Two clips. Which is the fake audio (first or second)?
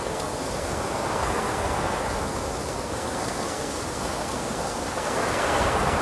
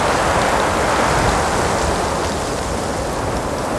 first